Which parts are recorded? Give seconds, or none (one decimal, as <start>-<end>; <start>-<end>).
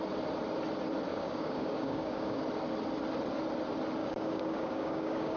0.0-1.1; 2.4-4.0